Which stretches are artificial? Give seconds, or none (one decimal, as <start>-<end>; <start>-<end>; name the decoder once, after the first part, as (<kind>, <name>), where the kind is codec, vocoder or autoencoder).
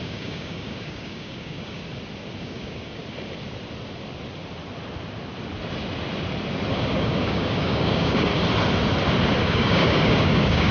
0.0-1.8 (codec, DAC); 2.4-3.0; 6.7-8.3; 9.4-10.7